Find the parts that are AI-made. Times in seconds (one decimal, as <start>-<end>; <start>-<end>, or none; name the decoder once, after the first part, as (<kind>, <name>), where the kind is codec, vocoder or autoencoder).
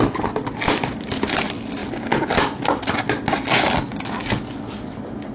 none